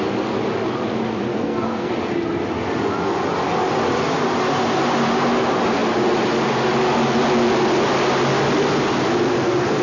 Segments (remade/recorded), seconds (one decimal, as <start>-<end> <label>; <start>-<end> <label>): 0.0-1.3 recorded; 1.3-1.9 remade; 1.9-9.8 recorded